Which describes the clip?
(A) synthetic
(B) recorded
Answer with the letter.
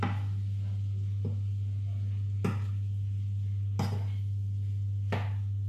B